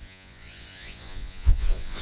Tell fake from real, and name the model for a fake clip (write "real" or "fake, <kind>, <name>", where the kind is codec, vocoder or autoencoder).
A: fake, vocoder, Vocos